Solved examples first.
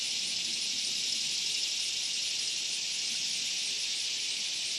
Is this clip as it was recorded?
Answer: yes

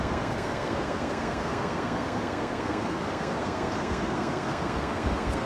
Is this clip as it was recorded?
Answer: no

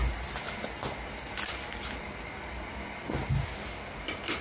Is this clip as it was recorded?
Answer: yes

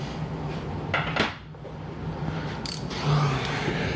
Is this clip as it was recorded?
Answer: yes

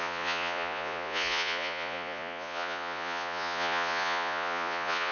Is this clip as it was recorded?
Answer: no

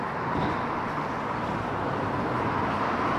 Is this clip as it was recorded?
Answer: yes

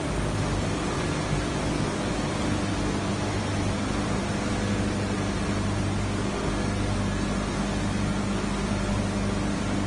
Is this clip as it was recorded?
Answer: yes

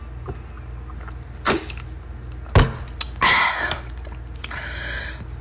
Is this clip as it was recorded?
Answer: yes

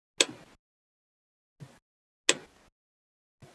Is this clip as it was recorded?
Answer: yes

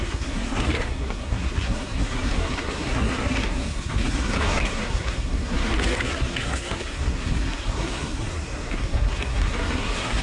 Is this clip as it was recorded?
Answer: no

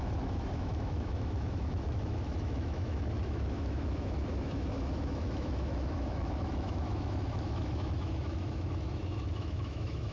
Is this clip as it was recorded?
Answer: no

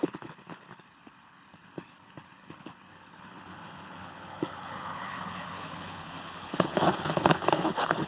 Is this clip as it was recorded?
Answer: no